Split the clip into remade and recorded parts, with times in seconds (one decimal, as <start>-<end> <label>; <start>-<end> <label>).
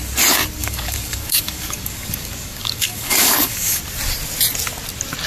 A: 0.0-0.6 recorded; 0.6-3.8 remade; 3.8-5.3 recorded